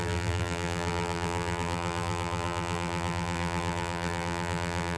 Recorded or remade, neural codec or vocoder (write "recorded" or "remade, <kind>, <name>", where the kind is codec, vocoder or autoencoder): remade, vocoder, BigVGAN v2